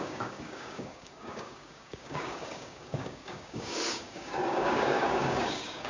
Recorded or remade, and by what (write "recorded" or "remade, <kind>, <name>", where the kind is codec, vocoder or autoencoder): remade, codec, DAC